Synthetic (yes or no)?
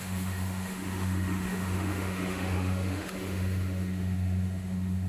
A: yes